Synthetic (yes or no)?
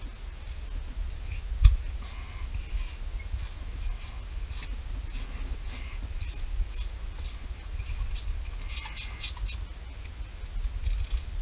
no